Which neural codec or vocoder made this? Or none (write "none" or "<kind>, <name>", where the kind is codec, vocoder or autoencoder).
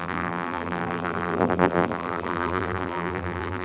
vocoder, BigVGAN v2